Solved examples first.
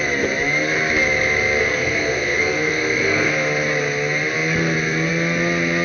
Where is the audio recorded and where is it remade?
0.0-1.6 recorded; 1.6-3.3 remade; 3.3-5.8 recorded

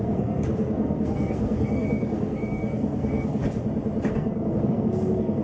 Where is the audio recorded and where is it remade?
0.0-3.4 remade; 3.4-4.0 recorded; 4.0-5.4 remade